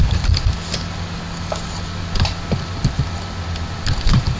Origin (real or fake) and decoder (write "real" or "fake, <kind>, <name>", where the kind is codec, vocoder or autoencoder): real